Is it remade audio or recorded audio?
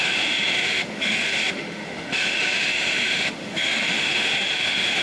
remade